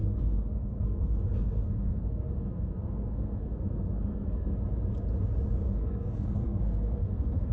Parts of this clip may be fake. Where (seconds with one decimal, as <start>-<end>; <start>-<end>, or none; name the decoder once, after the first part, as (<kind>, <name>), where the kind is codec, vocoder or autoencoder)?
0.0-4.5 (codec, SNAC); 5.6-7.5